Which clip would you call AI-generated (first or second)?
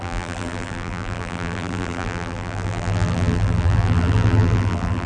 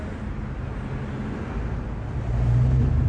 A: first